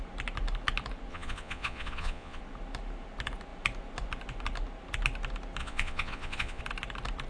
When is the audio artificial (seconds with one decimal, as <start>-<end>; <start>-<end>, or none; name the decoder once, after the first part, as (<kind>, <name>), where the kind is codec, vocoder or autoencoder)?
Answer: 1.1-2.4 (vocoder, Vocos); 5.6-6.6